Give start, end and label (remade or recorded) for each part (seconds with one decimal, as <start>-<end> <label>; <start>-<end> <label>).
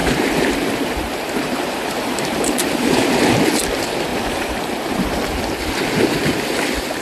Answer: 0.0-3.1 remade; 3.1-4.1 recorded; 4.1-5.4 remade; 5.4-7.0 recorded